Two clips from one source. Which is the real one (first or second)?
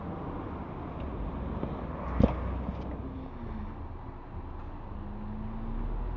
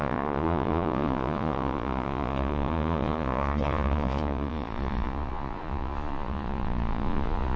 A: first